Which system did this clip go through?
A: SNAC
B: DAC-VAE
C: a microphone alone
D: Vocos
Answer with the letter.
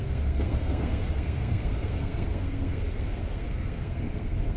A